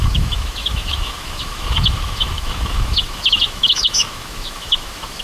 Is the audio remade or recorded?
remade